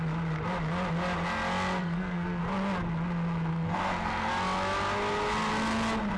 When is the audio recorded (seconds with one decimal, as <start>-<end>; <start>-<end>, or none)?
0.0-1.8; 2.4-3.5; 4.3-6.2